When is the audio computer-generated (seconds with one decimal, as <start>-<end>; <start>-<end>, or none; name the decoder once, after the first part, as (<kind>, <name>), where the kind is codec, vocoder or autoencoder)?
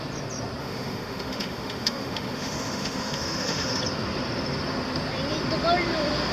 0.6-3.8 (autoencoder, DAC-VAE)